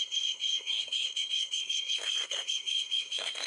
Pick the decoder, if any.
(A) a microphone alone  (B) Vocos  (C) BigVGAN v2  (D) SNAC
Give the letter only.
D